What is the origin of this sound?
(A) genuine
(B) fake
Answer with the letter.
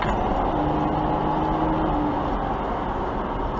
A